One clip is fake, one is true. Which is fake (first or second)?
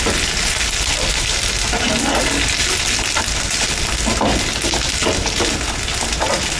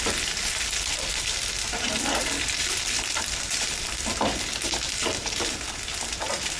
second